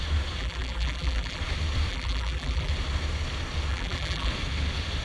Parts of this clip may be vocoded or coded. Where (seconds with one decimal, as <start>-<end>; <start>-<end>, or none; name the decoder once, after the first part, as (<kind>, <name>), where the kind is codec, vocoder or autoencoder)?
0.4-1.4 (vocoder, BigVGAN v2); 1.9-2.7; 3.7-4.3